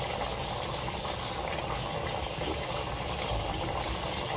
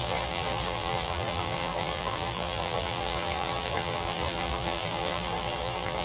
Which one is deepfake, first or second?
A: second